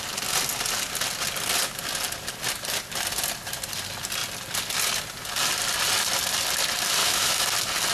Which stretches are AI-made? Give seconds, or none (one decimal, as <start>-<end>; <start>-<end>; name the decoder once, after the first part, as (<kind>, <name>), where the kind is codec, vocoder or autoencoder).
7.0-7.5 (autoencoder, DAC-VAE)